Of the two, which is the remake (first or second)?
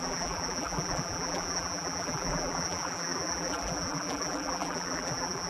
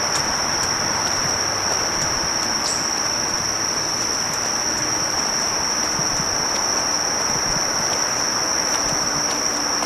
first